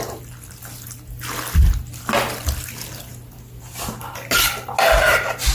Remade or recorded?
recorded